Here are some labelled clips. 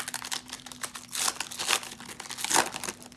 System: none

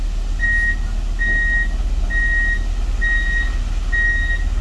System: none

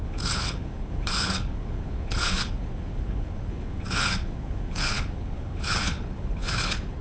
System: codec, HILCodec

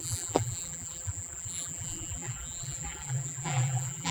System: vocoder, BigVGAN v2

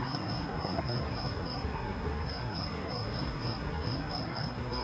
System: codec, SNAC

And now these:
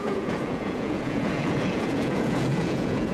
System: vocoder, Vocos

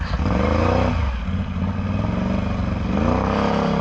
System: none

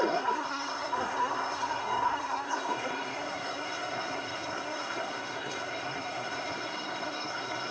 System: codec, SNAC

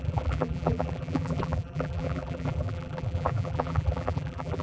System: vocoder, BigVGAN v2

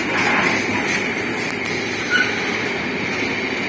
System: none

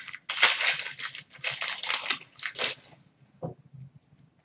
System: none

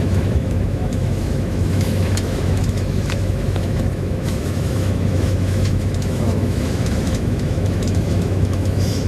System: autoencoder, DAC-VAE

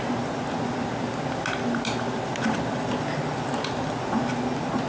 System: none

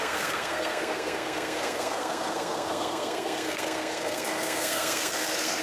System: codec, SNAC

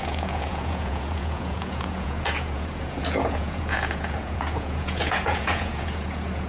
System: vocoder, Vocos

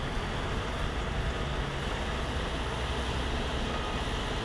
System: none